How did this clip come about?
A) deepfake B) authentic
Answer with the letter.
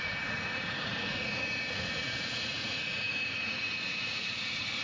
A